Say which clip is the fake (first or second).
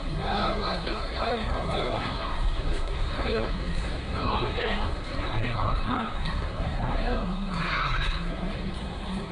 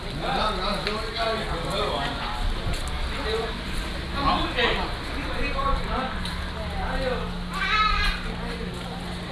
first